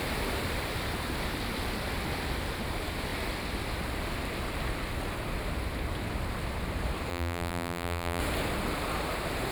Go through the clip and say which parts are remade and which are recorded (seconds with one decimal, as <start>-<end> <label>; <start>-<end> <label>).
0.0-7.1 recorded; 7.1-8.2 remade; 8.2-9.5 recorded